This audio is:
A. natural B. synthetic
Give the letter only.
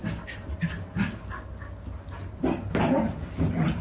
A